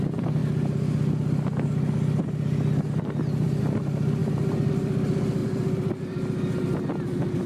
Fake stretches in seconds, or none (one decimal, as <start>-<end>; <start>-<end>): 5.4-6.0